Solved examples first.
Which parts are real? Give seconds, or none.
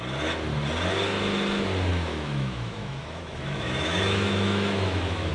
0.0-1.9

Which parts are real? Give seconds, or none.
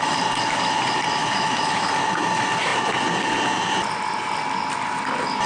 0.0-1.2; 1.9-5.5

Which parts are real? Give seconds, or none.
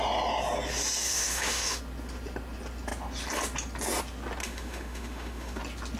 0.0-1.0; 1.8-4.4; 5.6-6.0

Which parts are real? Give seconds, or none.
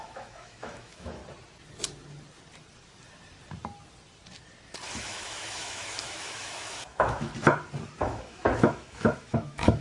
1.2-5.0; 7.3-8.0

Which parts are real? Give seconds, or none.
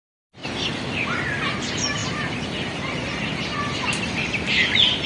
0.0-5.1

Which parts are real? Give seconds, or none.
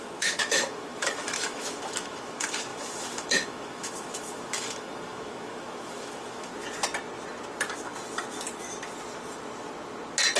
6.5-10.4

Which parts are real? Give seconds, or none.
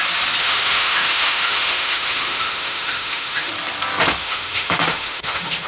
0.0-0.4; 3.5-4.2